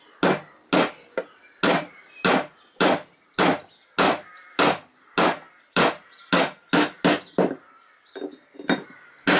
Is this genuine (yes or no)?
yes